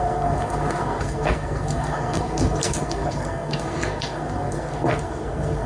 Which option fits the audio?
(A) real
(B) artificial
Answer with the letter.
B